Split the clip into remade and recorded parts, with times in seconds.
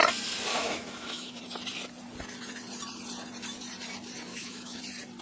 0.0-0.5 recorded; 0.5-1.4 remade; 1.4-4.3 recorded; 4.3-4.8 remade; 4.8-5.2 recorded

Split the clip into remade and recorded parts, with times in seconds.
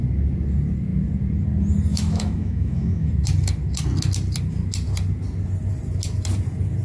0.0-1.9 recorded; 1.9-3.1 remade; 3.1-6.8 recorded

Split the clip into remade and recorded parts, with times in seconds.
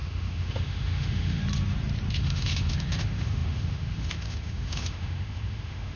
0.0-1.4 remade; 1.4-2.1 recorded; 2.1-6.0 remade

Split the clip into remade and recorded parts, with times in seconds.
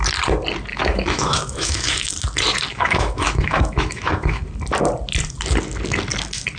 0.0-0.7 recorded; 0.7-2.1 remade; 2.1-2.7 recorded; 2.7-4.4 remade; 4.4-6.6 recorded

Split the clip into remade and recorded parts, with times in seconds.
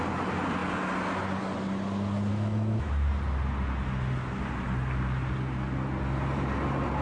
0.0-2.3 recorded; 2.3-2.9 remade; 2.9-7.0 recorded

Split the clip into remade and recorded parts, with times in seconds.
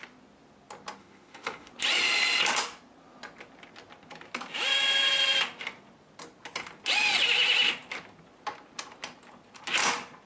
0.0-1.0 recorded; 1.0-1.7 remade; 1.7-10.3 recorded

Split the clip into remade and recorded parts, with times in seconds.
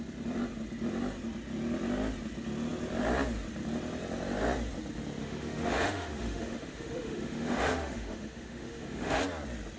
0.0-5.2 recorded; 5.2-9.2 remade; 9.2-9.8 recorded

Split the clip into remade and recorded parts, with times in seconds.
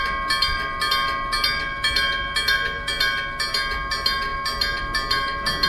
0.0-5.7 recorded